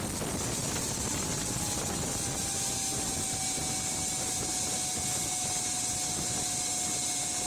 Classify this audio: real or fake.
real